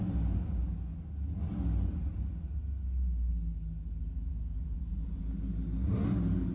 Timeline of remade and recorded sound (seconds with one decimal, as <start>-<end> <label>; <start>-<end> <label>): 0.0-4.3 recorded; 4.3-5.2 remade; 5.2-6.5 recorded